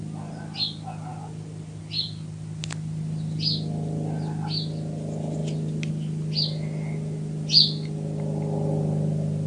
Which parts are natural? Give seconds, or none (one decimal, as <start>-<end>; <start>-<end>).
0.0-9.5